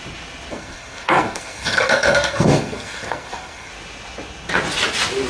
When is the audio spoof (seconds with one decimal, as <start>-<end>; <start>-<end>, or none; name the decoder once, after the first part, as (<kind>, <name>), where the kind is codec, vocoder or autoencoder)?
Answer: 0.5-3.7 (codec, SNAC)